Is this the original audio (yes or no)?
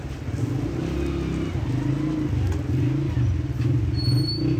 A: yes